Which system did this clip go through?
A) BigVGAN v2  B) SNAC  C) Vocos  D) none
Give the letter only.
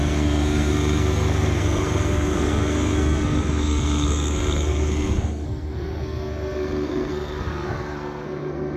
B